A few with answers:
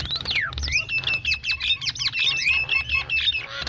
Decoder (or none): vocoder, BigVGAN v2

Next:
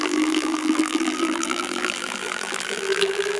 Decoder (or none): vocoder, BigVGAN v2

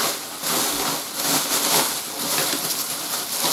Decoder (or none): none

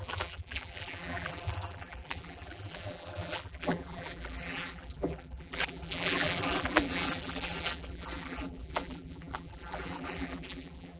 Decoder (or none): vocoder, BigVGAN v2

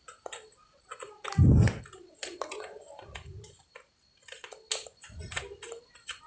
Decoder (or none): none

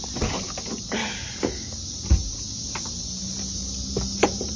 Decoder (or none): vocoder, BigVGAN v2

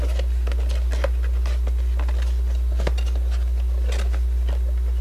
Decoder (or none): none